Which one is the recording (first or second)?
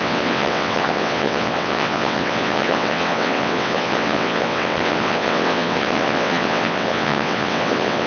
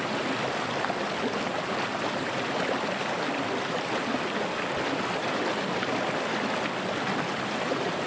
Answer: second